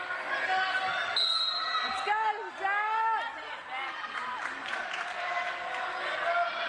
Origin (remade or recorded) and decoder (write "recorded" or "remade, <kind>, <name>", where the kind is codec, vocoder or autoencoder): recorded